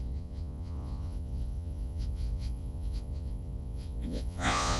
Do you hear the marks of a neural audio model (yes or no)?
yes